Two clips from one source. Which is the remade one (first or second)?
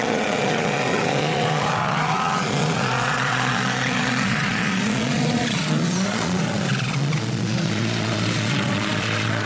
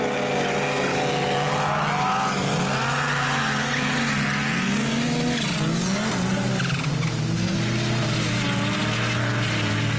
first